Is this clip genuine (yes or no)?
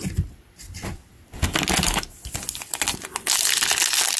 yes